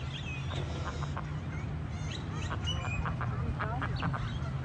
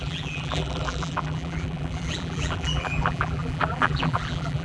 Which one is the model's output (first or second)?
second